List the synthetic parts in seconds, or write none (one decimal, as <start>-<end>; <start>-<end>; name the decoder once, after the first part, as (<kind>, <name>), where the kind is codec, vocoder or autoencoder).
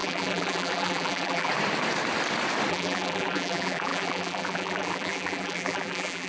0.0-1.5 (vocoder, BigVGAN v2); 2.7-6.3